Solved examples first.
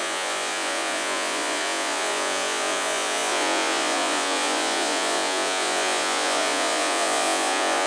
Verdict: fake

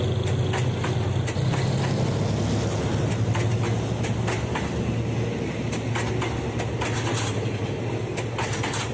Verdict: real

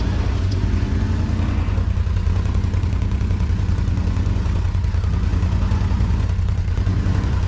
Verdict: fake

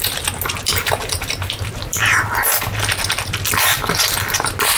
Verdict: real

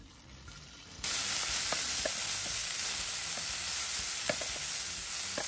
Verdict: real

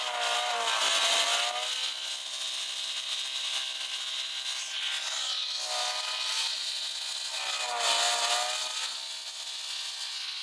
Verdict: real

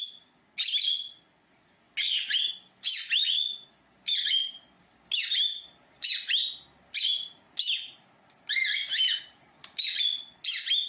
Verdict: real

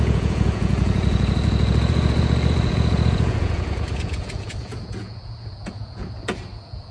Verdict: fake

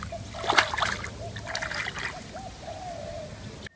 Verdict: real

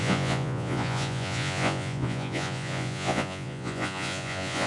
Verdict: fake